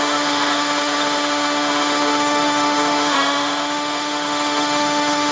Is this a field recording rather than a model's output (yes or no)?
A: no